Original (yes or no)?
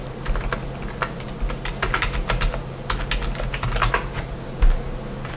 yes